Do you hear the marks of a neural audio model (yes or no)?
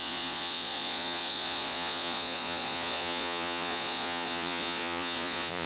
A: yes